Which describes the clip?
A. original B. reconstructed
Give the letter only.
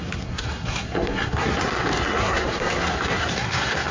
B